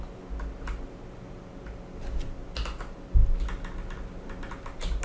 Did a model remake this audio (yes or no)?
no